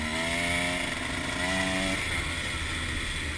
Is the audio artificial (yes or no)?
no